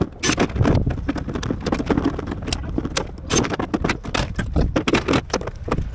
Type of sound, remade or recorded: recorded